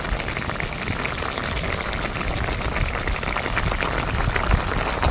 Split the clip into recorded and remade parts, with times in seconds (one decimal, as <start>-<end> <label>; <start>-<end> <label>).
0.0-5.1 recorded